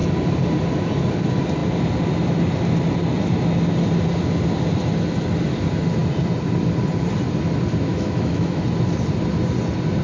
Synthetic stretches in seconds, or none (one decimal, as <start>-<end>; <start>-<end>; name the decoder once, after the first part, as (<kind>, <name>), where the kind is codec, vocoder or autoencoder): 7.9-8.6 (autoencoder, DAC-VAE)